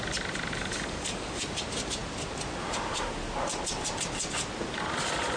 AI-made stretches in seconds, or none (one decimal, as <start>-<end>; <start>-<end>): 0.6-1.4